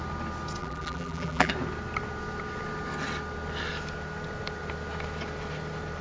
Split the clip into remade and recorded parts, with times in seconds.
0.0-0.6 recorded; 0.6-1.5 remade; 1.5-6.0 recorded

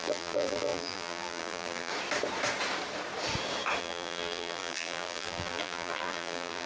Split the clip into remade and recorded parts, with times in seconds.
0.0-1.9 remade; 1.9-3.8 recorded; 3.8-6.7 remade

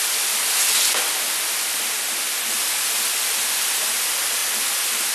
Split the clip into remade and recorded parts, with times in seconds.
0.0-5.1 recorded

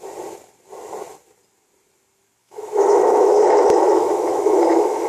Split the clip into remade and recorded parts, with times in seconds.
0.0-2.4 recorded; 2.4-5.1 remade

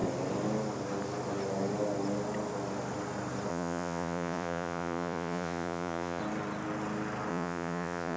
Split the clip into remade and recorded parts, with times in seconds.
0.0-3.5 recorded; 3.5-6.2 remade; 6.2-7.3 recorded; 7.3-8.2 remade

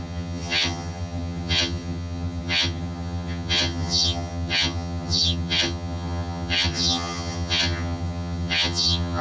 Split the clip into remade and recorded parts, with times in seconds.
0.0-9.2 remade

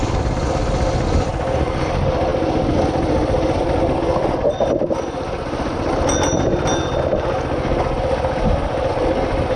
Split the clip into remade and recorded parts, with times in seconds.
0.0-9.6 recorded

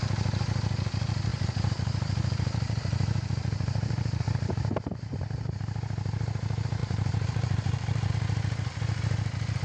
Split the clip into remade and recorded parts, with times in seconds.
0.0-1.3 recorded; 1.3-5.1 remade; 5.1-6.8 recorded; 6.8-8.1 remade; 8.1-9.6 recorded